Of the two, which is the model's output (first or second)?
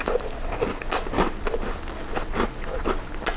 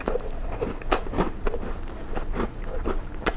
second